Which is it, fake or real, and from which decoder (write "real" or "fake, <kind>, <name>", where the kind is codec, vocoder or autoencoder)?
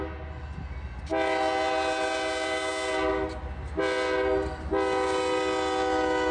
real